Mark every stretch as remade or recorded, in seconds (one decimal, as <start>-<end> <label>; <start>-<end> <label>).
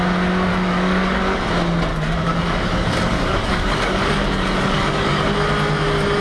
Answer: 0.0-0.5 recorded; 0.5-1.4 remade; 1.4-1.9 recorded; 1.9-5.3 remade; 5.3-6.2 recorded